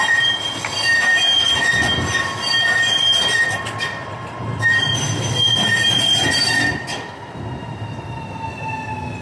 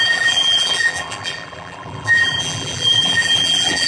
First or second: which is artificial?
second